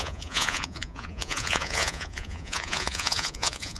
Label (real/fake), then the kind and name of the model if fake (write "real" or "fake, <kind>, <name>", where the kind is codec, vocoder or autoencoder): fake, vocoder, Vocos